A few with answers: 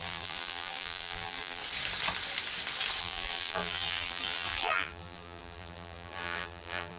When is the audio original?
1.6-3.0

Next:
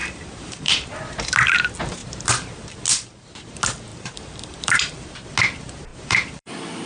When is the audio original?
0.7-3.9; 5.1-5.9; 6.5-6.9

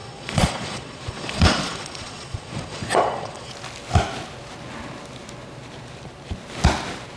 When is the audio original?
3.5-7.2

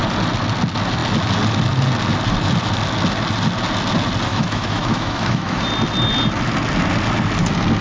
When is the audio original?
0.0-4.3; 5.6-7.8

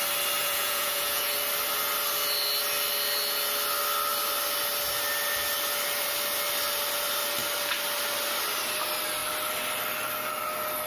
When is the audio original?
0.0-0.4; 1.3-10.9

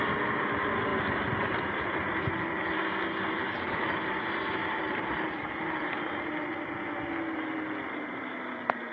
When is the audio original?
0.0-8.9